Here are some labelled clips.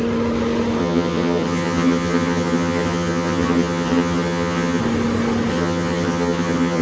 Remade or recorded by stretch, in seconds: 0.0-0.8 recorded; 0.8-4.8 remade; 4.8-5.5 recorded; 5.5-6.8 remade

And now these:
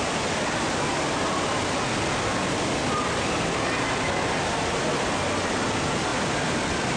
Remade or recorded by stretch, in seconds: 0.0-7.0 recorded

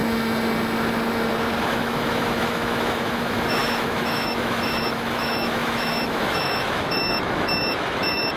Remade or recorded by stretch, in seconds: 0.0-1.6 recorded; 1.6-8.4 remade